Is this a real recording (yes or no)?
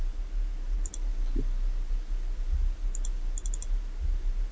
yes